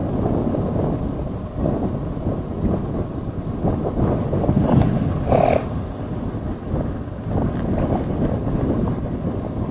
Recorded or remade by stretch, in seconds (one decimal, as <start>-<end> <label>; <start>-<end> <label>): 0.0-9.7 recorded